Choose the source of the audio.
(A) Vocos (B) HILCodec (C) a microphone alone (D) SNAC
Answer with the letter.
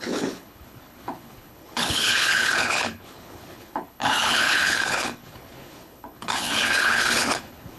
B